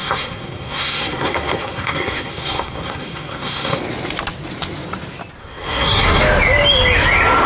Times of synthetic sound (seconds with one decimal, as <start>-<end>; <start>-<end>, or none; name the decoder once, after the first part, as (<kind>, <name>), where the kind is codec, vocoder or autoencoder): 0.0-3.8 (codec, SNAC); 5.4-6.2